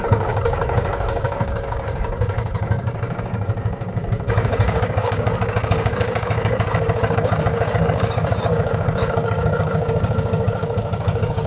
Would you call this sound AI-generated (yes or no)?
yes